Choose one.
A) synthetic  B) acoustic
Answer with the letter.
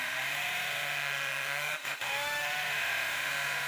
A